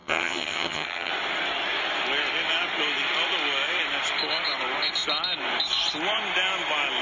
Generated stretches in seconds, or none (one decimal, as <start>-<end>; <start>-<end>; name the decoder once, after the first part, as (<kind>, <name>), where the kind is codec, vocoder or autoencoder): 0.0-1.1 (vocoder, HiFi-GAN)